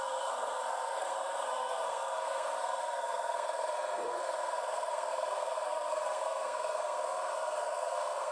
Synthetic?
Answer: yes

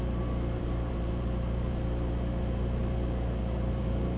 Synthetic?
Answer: yes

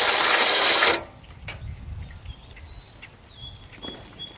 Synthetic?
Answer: no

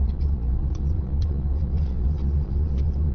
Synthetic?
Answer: yes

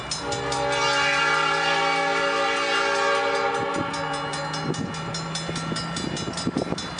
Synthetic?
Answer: no